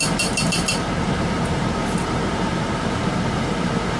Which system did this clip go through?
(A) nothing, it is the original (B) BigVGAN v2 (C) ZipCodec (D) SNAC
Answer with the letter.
B